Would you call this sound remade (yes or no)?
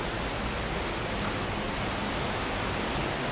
no